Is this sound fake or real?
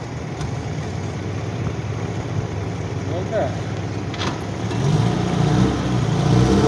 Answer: real